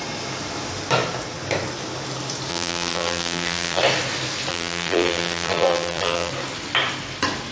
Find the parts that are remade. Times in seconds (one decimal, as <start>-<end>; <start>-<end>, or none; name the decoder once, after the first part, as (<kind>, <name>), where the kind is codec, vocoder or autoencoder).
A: 2.5-3.8 (vocoder, BigVGAN v2); 4.5-6.3